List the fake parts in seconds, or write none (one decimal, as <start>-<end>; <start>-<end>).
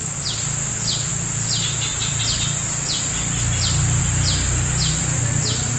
none